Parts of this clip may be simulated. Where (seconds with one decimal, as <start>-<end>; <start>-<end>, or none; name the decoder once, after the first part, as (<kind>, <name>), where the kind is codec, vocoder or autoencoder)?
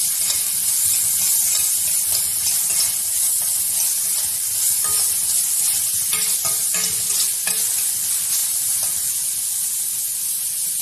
8.4-9.1 (vocoder, BigVGAN v2)